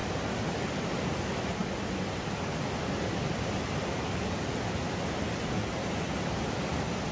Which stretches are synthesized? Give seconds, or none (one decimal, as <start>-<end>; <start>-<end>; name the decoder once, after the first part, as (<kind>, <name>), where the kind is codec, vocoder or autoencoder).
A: none